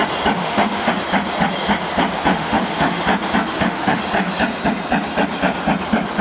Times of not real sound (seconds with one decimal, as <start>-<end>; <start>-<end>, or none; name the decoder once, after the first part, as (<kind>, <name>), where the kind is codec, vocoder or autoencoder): 0.4-0.9 (autoencoder, DAC-VAE); 2.3-3.0; 3.5-4.0